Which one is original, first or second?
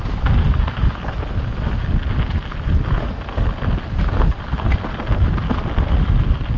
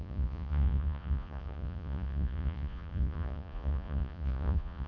first